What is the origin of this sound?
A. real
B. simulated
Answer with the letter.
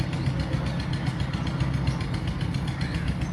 A